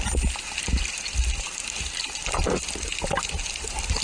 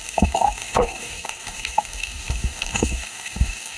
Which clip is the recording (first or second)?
first